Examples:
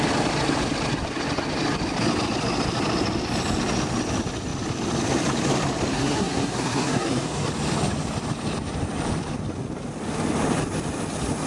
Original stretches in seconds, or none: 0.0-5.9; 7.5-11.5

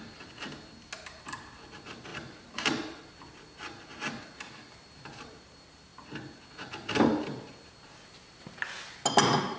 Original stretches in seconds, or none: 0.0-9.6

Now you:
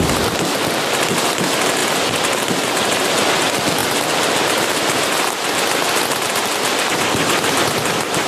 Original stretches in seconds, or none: 0.0-8.3